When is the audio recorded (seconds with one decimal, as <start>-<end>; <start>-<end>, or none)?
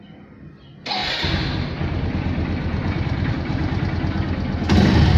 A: 0.0-1.0; 3.3-5.2